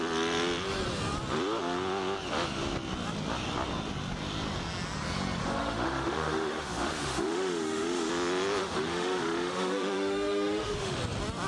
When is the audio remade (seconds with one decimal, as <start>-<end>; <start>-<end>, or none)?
5.4-8.1; 8.6-11.0